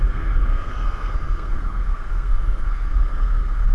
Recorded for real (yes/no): no